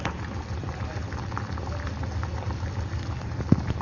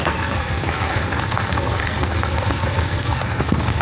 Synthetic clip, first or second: second